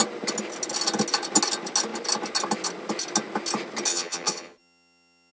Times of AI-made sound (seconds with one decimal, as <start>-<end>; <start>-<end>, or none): 3.9-5.3